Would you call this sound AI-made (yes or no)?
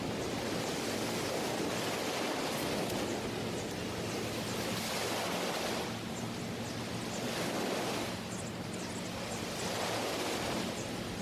no